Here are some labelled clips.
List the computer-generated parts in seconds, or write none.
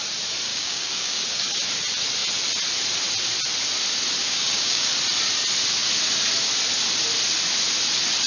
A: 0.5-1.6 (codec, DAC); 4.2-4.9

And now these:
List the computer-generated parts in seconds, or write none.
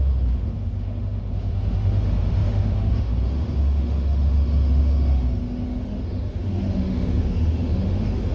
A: 0.0-8.3 (autoencoder, DAC-VAE)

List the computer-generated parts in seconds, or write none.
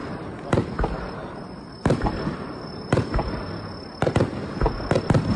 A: 1.2-3.5 (vocoder, BigVGAN v2)